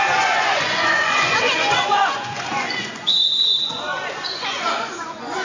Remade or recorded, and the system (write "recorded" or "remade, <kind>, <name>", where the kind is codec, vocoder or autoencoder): remade, vocoder, Vocos